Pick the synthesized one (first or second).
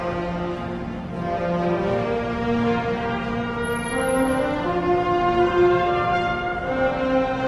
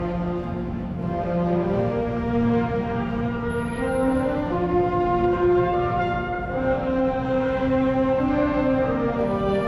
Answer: second